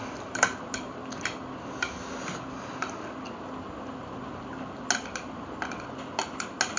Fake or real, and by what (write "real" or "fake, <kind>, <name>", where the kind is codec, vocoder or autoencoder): real